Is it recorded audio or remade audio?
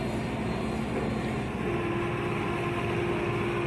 recorded